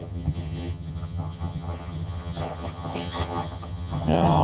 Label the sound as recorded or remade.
remade